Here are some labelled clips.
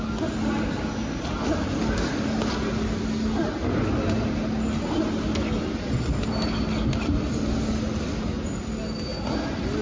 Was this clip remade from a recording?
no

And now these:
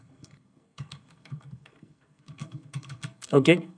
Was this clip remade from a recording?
yes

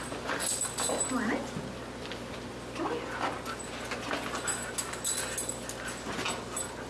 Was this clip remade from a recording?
no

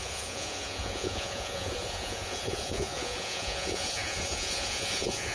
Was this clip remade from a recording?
yes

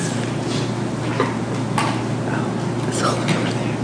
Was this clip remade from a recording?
no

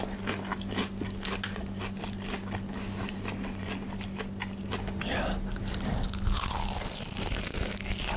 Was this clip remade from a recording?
no